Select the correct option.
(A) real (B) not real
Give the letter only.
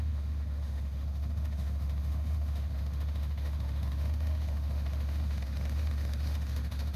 B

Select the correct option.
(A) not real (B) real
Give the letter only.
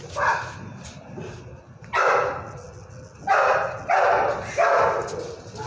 B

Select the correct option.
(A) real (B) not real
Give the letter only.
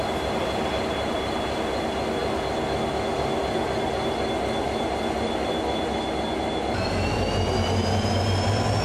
A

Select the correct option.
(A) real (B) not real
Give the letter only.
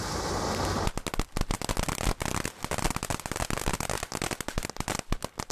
A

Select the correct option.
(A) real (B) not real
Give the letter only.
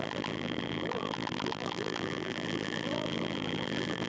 B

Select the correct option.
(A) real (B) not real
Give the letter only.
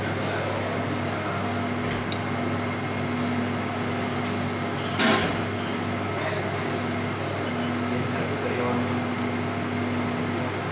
A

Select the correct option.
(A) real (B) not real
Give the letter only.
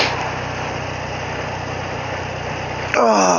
A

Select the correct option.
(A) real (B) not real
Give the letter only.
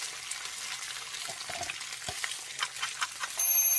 A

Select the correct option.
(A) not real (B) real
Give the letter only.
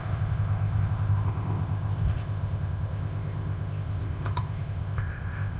A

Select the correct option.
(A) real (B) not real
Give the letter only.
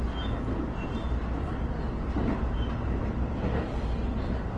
A